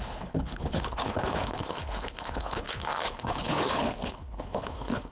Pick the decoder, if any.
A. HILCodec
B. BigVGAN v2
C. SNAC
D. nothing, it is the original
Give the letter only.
A